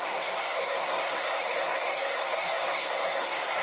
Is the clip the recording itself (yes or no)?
no